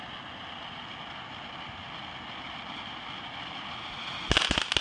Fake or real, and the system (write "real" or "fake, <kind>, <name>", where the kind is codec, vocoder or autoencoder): real